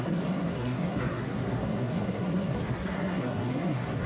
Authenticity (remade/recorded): remade